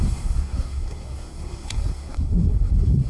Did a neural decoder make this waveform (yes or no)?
yes